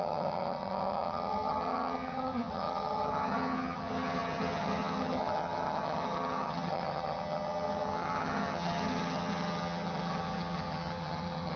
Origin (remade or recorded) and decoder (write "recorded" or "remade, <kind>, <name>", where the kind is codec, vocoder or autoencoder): remade, vocoder, HiFi-GAN